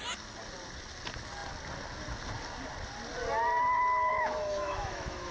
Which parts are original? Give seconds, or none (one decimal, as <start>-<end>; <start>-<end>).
0.0-4.1